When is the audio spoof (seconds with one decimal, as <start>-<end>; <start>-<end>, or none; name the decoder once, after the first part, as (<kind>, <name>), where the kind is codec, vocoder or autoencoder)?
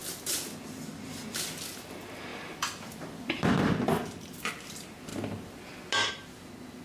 2.3-4.5 (vocoder, BigVGAN v2)